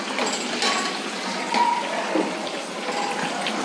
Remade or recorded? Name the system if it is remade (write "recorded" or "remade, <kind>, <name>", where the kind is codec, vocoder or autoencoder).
recorded